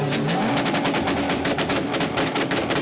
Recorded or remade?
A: recorded